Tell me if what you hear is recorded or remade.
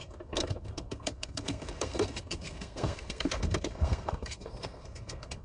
remade